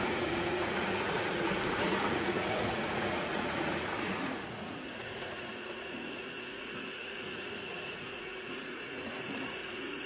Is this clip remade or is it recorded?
remade